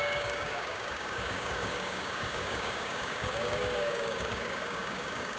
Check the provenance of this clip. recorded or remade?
remade